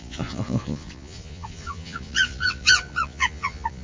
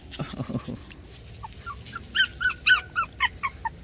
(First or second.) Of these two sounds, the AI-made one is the first